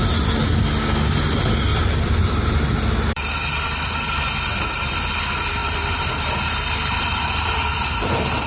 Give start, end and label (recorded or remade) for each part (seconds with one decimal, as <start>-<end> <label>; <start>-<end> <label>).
0.0-1.7 recorded; 1.7-4.9 remade; 4.9-5.6 recorded; 5.6-7.7 remade; 7.7-8.5 recorded